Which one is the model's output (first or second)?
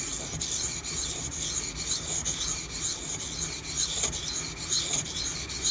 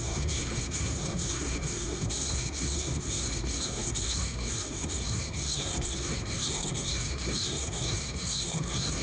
second